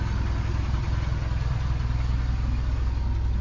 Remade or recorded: recorded